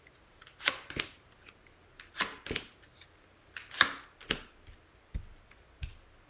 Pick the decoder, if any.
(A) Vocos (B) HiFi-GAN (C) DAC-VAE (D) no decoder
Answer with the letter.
D